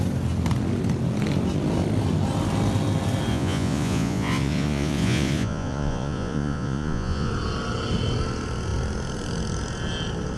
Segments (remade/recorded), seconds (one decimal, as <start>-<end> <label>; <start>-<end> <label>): 0.0-3.3 recorded; 3.3-7.3 remade; 7.3-10.4 recorded